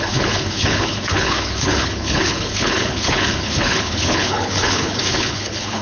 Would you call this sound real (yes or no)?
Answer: no